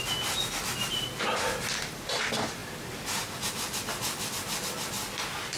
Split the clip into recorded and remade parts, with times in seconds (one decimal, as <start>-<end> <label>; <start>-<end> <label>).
0.0-5.6 recorded